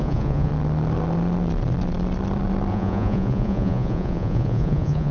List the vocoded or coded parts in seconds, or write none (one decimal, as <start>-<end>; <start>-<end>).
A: 0.0-0.5; 2.7-5.1